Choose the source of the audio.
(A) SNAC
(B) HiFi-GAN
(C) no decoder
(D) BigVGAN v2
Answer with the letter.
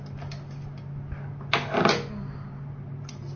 C